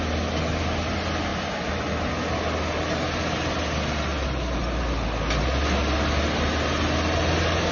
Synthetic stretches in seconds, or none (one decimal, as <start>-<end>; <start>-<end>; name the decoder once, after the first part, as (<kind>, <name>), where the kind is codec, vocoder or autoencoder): none